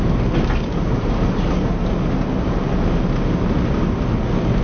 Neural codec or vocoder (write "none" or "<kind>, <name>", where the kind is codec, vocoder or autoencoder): none